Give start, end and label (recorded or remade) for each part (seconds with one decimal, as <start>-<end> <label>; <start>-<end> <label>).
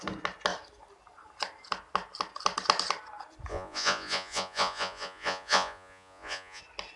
0.0-3.5 recorded; 3.5-6.6 remade; 6.6-7.0 recorded